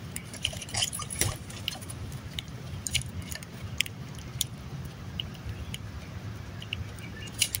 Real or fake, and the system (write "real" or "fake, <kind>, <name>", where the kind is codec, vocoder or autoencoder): fake, vocoder, BigVGAN v2